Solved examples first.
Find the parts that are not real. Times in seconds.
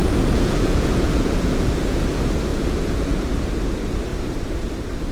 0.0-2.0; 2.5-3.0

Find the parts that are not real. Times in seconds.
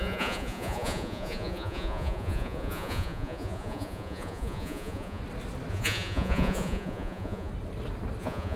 0.0-5.2; 5.7-7.5; 8.2-8.6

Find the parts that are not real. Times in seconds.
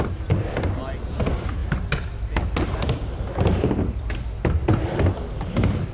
none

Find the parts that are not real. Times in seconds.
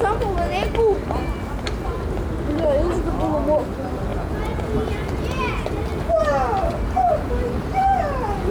4.1-4.8